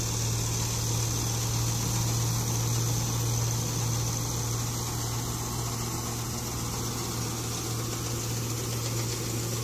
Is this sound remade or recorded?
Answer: recorded